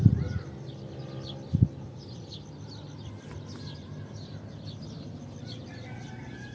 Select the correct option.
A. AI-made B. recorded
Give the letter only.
B